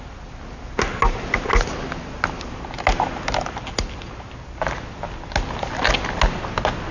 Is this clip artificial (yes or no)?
no